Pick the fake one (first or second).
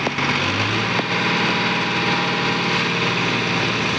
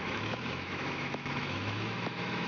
second